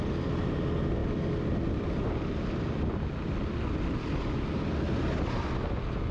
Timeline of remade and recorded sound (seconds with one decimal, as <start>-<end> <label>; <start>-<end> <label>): 0.0-6.1 recorded